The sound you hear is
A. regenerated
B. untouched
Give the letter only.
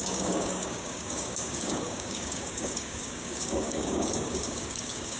A